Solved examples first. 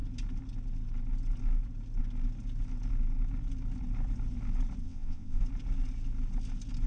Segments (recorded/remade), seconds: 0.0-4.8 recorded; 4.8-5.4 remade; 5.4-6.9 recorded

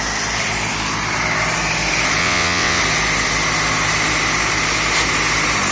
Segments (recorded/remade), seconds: 0.0-2.2 recorded; 2.2-2.8 remade; 2.8-5.7 recorded

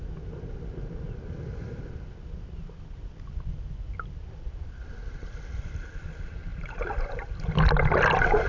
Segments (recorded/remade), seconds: 0.0-8.5 recorded

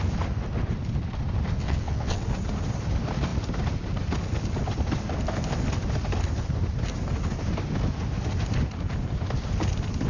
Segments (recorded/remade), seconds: 0.0-1.6 recorded; 1.6-2.2 remade; 2.2-10.1 recorded

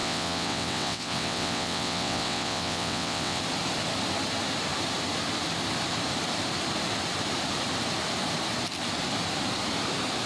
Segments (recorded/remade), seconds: 0.0-3.4 remade; 3.4-10.3 recorded

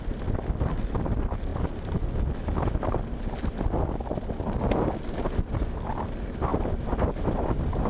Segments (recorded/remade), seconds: 0.0-7.9 recorded

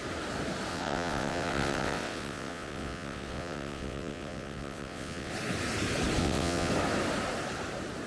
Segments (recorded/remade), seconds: 0.0-0.7 recorded; 0.7-5.3 remade; 5.3-6.2 recorded; 6.2-6.7 remade; 6.7-8.1 recorded

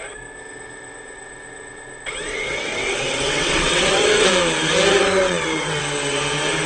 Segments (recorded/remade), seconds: 0.0-2.3 recorded; 2.3-4.3 remade; 4.3-5.2 recorded; 5.2-5.8 remade; 5.8-6.7 recorded